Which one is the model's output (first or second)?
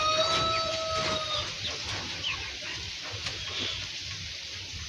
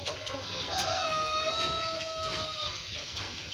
second